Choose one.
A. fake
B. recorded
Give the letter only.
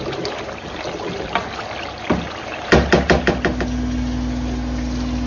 B